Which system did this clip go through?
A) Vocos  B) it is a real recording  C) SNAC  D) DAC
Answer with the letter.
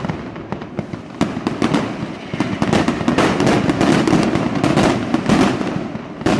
B